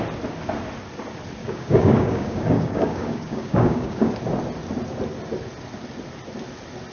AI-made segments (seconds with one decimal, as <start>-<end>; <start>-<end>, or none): 1.4-4.1